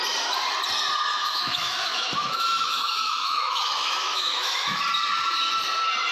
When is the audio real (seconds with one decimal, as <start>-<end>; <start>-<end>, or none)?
0.0-1.1; 4.8-6.1